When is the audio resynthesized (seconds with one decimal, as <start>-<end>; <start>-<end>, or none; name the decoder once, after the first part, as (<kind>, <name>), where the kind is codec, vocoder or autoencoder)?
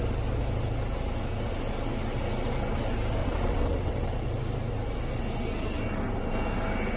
3.2-4.2 (vocoder, WaveNeXt)